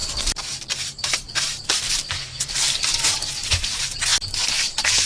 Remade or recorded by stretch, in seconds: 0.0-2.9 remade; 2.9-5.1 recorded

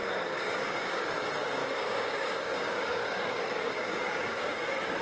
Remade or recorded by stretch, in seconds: 0.0-1.1 remade; 1.1-1.6 recorded; 1.6-4.6 remade; 4.6-5.0 recorded

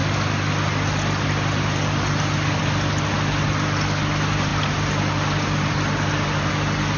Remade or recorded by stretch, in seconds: 0.0-7.0 recorded

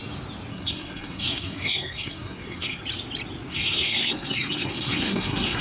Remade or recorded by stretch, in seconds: 0.0-0.5 recorded; 0.5-2.8 remade; 2.8-3.5 recorded; 3.5-5.6 remade

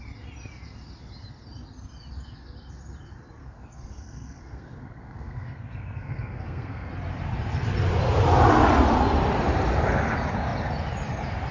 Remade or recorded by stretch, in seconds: 0.0-3.4 recorded; 3.4-6.9 remade; 6.9-11.5 recorded

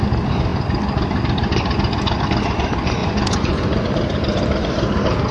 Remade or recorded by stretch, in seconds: 0.0-3.0 recorded; 3.0-3.9 remade; 3.9-5.3 recorded

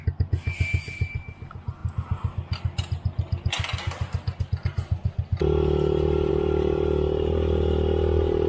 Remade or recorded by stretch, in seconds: 0.0-8.5 recorded

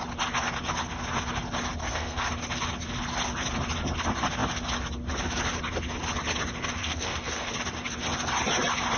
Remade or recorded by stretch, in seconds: 0.0-1.8 recorded; 1.8-2.3 remade; 2.3-6.8 recorded; 6.8-7.5 remade; 7.5-9.0 recorded